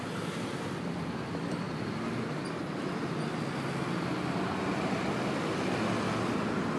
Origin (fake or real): real